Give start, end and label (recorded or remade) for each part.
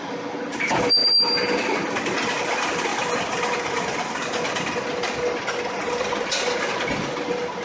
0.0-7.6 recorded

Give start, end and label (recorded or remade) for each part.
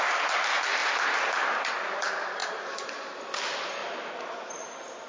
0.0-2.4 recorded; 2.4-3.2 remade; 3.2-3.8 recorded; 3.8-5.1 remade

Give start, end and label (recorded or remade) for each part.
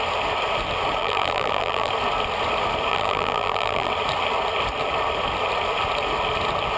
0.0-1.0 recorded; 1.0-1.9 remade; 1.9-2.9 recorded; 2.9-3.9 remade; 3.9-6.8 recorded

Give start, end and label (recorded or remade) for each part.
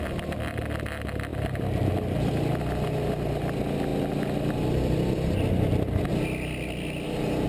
0.0-7.5 recorded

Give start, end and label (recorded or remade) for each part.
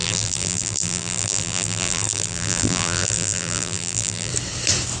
0.0-4.3 remade; 4.3-5.0 recorded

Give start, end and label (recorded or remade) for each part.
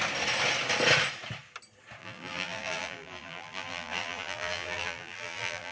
0.0-2.0 recorded; 2.0-5.7 remade